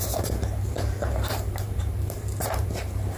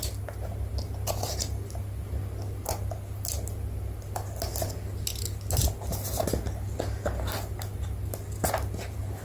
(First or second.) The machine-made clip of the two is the first